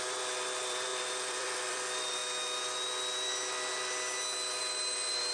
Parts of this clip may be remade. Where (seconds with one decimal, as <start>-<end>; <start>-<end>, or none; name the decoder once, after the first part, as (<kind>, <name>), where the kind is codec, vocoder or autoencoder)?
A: 0.0-2.2 (vocoder, BigVGAN v2); 4.6-5.3

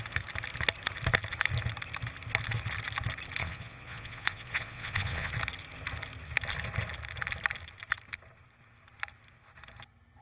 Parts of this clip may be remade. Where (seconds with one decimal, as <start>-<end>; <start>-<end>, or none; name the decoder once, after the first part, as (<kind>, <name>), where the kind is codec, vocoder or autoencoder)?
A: 3.4-5.3 (vocoder, Vocos)

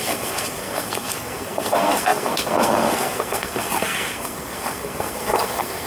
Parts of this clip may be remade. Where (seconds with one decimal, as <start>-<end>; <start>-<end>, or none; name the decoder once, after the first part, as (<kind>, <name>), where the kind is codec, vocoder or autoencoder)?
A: 0.0-5.9 (codec, SNAC)

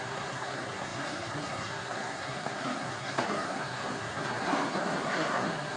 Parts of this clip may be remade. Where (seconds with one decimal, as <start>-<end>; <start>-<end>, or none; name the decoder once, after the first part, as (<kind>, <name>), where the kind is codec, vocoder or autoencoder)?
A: 0.0-5.8 (codec, SNAC)